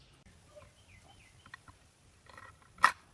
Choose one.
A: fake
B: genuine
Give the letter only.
B